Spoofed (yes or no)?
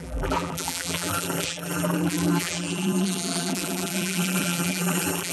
yes